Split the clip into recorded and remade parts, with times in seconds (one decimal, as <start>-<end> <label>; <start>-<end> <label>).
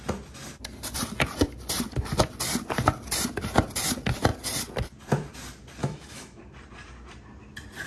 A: 0.0-5.8 recorded; 5.8-6.4 remade; 6.4-7.9 recorded